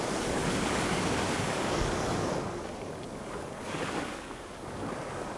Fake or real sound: fake